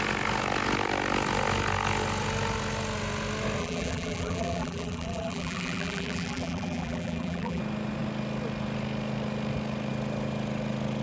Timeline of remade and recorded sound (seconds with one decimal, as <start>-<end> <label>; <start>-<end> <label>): 0.0-3.6 recorded; 3.6-7.6 remade; 7.6-11.0 recorded